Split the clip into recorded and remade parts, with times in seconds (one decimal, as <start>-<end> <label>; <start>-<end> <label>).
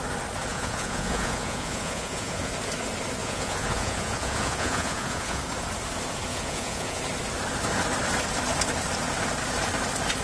0.0-0.5 recorded; 0.5-2.5 remade; 2.5-3.2 recorded; 3.2-5.4 remade; 5.4-6.3 recorded; 6.3-7.0 remade; 7.0-10.2 recorded